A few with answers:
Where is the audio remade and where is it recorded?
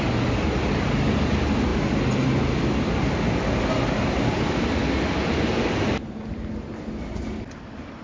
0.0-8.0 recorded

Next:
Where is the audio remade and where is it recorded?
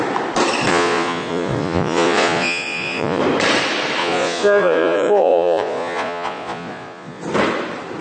0.0-0.7 recorded; 0.7-3.2 remade; 3.2-4.0 recorded; 4.0-7.2 remade; 7.2-8.0 recorded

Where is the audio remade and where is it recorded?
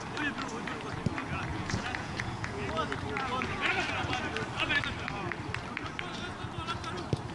0.0-1.5 recorded; 1.5-2.7 remade; 2.7-3.2 recorded; 3.2-3.7 remade; 3.7-7.3 recorded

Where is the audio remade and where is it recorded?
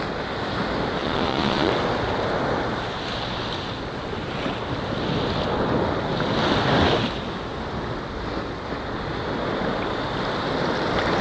0.0-1.0 recorded; 1.0-1.7 remade; 1.7-11.2 recorded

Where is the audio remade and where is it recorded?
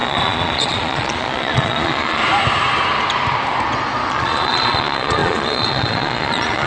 0.0-2.2 remade; 2.2-4.1 recorded; 4.1-6.7 remade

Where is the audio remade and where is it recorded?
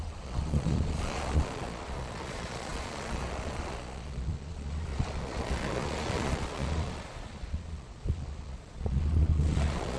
0.0-10.0 remade